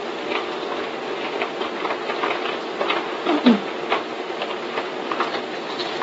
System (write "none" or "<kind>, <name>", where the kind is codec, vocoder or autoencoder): none